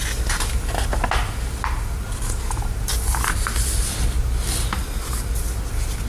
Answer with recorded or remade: recorded